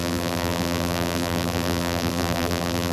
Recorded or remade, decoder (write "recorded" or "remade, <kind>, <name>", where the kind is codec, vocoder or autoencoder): remade, vocoder, BigVGAN v2